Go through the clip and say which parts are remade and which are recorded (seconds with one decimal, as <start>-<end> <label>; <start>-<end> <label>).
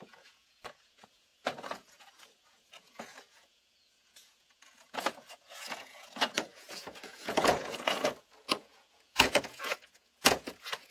0.0-10.9 remade